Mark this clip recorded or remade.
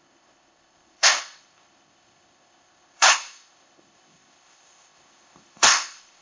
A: remade